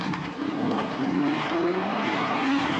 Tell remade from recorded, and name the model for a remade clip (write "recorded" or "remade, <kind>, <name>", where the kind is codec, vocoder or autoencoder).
remade, codec, SNAC